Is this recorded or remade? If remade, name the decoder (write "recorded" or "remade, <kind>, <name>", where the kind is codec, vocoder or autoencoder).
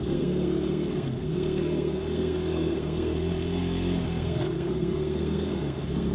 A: remade, codec, SNAC